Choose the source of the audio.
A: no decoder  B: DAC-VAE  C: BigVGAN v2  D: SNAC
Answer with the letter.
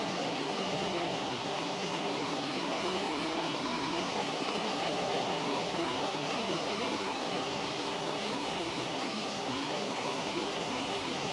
D